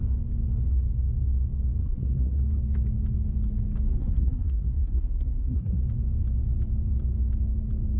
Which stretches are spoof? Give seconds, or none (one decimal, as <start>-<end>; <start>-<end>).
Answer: 1.8-2.4; 4.0-5.8